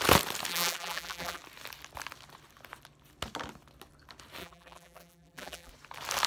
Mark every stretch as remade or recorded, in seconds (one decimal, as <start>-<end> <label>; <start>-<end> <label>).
0.0-0.5 recorded; 0.5-1.4 remade; 1.4-4.4 recorded; 4.4-5.7 remade; 5.7-6.3 recorded